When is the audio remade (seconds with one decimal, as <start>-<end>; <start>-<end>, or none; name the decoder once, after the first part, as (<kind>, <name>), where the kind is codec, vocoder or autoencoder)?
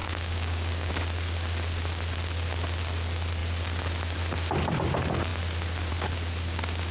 0.0-0.9 (codec, DAC)